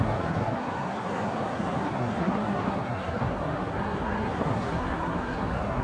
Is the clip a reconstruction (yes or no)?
yes